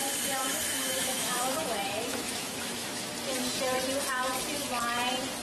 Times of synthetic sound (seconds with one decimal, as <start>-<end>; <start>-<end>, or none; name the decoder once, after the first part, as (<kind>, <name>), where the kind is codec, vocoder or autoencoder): 0.5-3.0 (autoencoder, DAC-VAE)